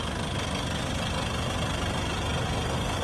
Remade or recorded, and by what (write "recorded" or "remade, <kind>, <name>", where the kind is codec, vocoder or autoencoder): recorded